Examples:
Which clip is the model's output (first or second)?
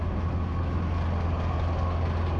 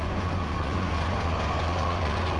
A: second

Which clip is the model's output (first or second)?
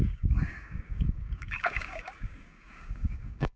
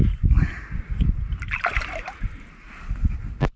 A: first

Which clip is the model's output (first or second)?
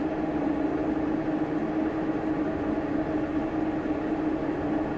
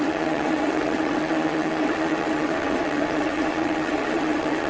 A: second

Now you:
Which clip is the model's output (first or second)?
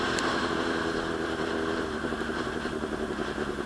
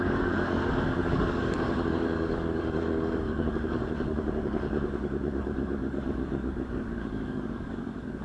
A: second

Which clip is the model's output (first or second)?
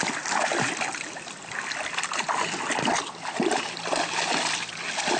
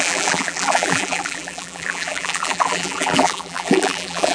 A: second